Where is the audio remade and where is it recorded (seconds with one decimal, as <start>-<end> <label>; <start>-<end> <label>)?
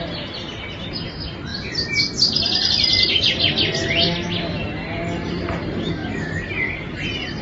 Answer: 0.0-7.4 recorded